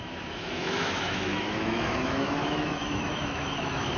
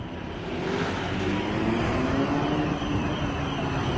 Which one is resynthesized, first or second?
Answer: first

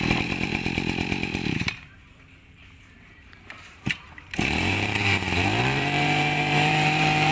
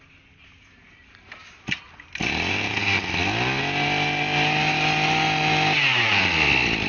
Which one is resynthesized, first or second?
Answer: first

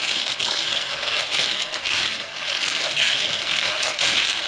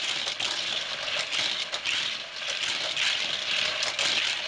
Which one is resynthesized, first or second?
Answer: first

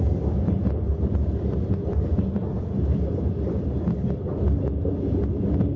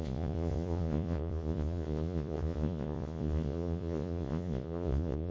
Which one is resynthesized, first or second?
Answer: second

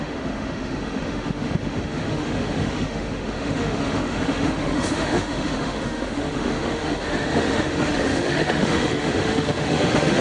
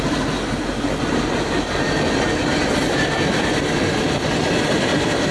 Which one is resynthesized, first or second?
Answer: first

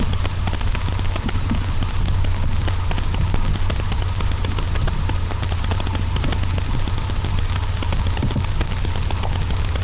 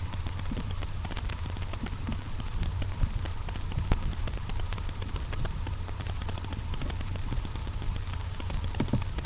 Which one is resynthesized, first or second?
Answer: second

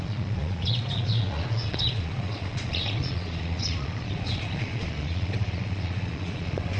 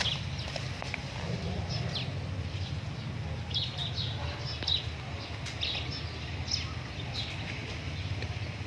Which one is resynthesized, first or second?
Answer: first